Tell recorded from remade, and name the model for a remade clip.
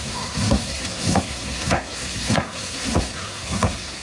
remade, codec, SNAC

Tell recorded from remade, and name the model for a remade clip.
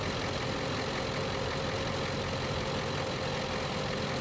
recorded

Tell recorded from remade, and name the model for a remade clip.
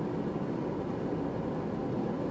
recorded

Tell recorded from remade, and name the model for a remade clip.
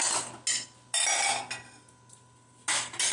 recorded